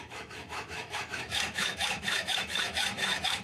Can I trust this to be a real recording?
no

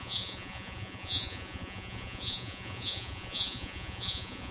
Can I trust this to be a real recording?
no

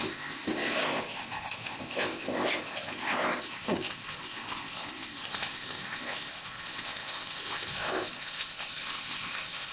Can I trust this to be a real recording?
no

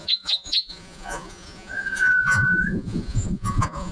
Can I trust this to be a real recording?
no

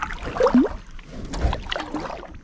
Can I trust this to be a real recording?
yes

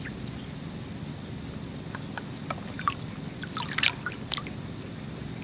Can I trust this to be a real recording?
yes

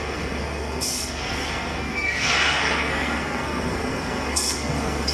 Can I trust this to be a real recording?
no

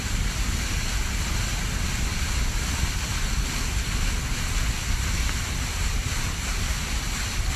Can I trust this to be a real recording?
yes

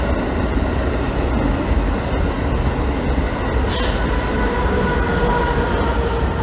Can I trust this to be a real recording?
yes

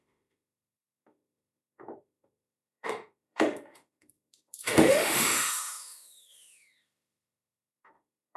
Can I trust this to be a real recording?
no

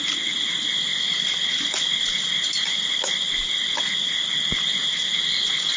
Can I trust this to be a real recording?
yes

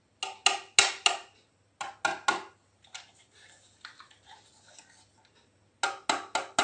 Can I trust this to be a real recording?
yes